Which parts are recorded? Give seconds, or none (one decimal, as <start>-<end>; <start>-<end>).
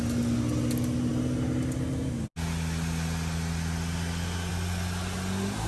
0.0-5.7